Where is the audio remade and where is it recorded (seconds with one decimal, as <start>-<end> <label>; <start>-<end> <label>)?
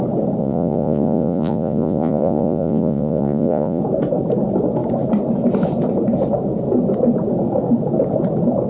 0.0-0.4 recorded; 0.4-3.8 remade; 3.8-8.7 recorded